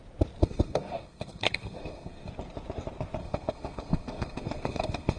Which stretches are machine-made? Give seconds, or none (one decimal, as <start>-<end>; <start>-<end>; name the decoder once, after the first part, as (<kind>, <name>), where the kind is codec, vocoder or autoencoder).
0.4-2.3 (codec, SNAC); 3.2-5.2